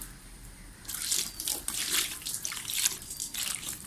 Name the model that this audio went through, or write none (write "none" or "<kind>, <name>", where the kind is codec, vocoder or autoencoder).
vocoder, BigVGAN v2